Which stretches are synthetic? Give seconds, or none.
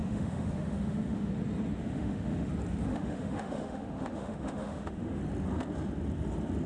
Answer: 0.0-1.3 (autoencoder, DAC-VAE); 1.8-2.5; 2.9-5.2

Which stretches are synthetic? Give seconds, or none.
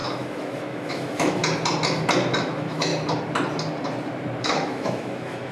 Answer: 0.0-1.4 (autoencoder, DAC-VAE); 2.4-2.9; 4.4-5.5